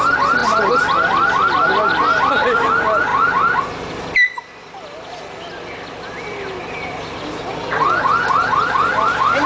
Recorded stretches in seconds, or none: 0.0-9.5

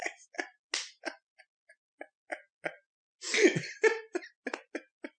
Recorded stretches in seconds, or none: 0.0-5.2

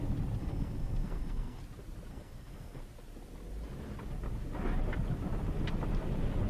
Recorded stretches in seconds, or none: 0.0-0.4; 1.6-2.1; 2.8-6.5

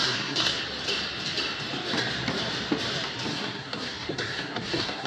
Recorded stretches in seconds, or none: 0.6-3.3